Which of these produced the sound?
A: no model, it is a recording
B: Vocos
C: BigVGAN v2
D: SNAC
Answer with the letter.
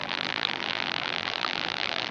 C